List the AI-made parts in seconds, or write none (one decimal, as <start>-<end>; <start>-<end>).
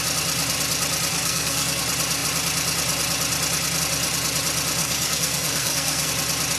1.1-1.8; 4.8-6.1